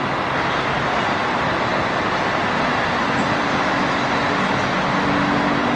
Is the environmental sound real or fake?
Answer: real